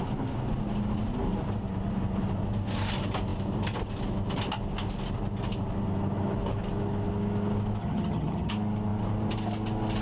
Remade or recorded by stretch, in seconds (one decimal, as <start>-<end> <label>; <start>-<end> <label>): 0.0-7.8 recorded; 7.8-8.5 remade; 8.5-10.0 recorded